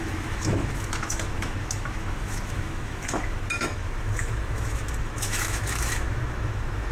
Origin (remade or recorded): remade